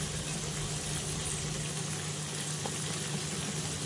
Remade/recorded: recorded